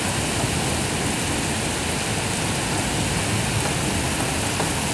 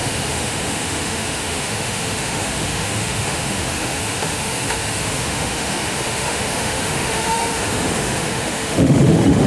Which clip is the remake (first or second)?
second